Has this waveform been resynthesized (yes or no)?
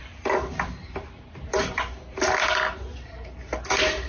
no